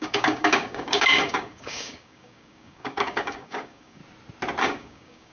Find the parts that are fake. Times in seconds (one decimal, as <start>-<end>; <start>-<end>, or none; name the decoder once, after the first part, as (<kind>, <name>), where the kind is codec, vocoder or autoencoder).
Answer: 0.0-4.0 (codec, DAC); 4.6-5.3